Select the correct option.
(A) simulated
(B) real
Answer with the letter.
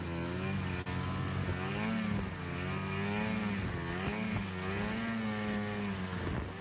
B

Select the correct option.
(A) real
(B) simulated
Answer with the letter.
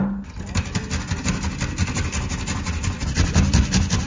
A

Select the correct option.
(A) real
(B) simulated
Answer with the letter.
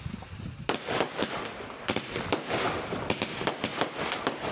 A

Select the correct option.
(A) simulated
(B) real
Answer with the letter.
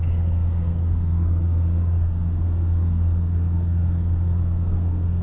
A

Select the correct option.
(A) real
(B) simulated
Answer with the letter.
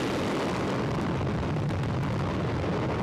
A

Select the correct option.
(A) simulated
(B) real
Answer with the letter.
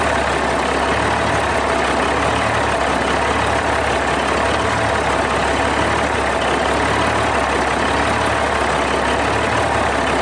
B